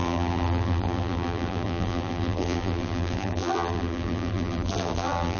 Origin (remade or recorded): remade